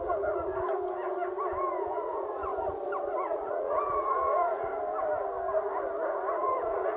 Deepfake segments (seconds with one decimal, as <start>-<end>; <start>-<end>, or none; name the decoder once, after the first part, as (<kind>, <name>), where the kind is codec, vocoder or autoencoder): 0.0-0.5 (vocoder, Vocos); 1.6-2.5; 3.0-4.7; 6.3-7.0